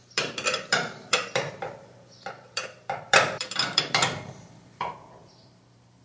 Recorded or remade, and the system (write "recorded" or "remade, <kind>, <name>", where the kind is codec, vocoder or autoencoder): remade, vocoder, BigVGAN v2